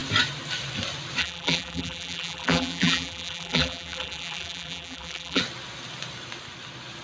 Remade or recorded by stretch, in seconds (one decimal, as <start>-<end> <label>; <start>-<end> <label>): 0.0-1.2 recorded; 1.2-5.4 remade; 5.4-7.0 recorded